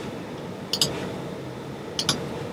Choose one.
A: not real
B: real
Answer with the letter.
B